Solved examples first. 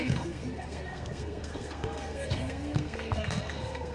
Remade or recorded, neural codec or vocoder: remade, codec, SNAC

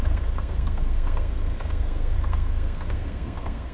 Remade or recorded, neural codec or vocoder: remade, codec, SNAC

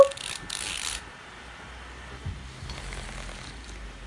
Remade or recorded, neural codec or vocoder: recorded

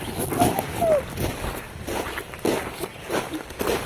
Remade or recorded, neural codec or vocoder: recorded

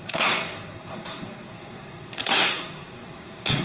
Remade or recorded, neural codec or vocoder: remade, codec, SNAC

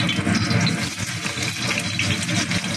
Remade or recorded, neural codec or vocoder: recorded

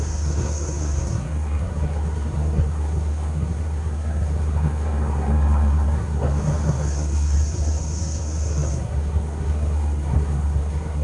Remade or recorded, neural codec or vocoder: remade, codec, SNAC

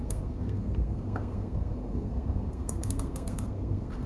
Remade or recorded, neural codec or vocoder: remade, codec, SNAC